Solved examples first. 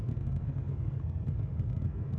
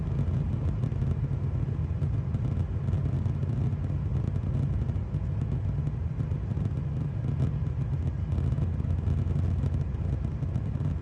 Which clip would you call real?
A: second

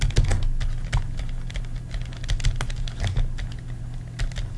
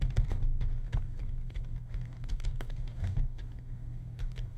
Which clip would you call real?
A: first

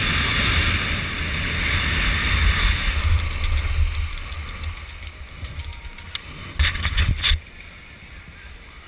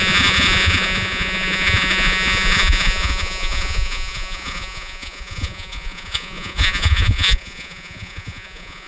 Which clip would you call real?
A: first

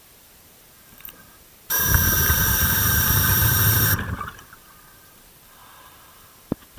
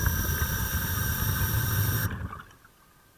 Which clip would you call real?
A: second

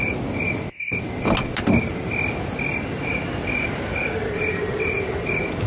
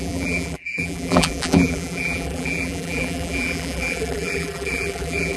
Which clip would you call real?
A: first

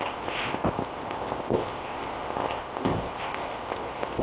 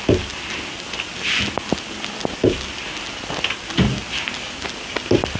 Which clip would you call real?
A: second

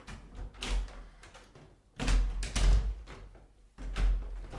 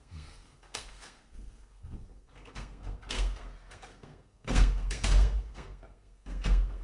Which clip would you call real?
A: first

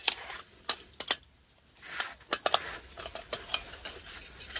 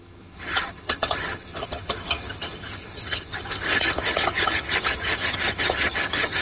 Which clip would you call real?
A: first